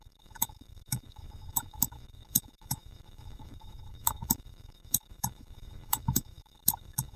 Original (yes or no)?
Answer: no